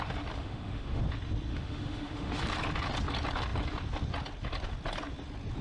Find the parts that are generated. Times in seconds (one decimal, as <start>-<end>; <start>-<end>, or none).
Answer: 0.4-1.0; 1.5-2.4